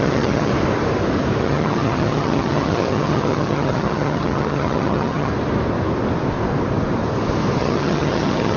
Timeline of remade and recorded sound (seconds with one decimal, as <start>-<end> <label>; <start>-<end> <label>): 0.0-0.5 remade; 0.5-1.4 recorded; 1.4-5.3 remade; 5.3-7.6 recorded; 7.6-8.6 remade